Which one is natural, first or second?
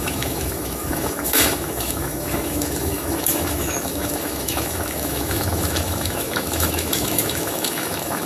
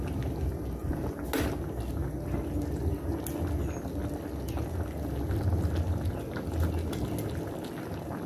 second